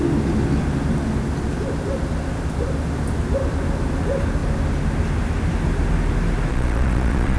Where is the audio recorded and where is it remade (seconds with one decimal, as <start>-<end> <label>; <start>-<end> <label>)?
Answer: 0.0-6.5 recorded; 6.5-7.4 remade